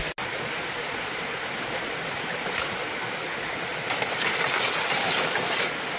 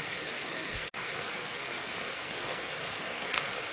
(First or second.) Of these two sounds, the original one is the first